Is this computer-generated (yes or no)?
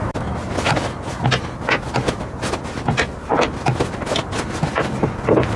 no